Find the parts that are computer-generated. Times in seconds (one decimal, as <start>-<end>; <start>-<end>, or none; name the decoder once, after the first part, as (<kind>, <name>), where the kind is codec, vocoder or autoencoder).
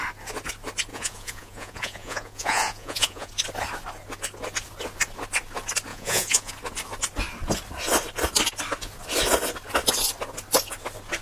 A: 0.9-3.3 (vocoder, Vocos); 5.9-6.5